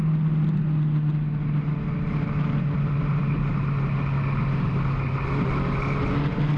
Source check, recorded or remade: recorded